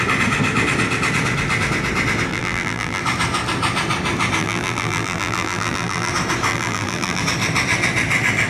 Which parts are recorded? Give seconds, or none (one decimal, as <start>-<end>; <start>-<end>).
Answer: 0.0-2.3; 3.0-4.4; 6.1-6.5; 7.2-8.5